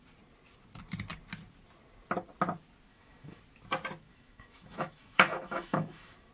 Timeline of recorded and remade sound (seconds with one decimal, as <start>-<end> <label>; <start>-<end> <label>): 0.0-2.9 recorded; 2.9-3.4 remade; 3.4-4.1 recorded; 4.1-6.3 remade